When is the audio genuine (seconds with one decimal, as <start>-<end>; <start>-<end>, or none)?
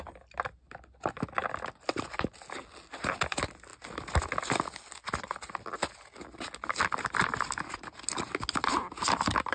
0.0-9.5